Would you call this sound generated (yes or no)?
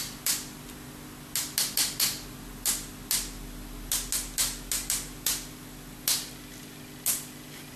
no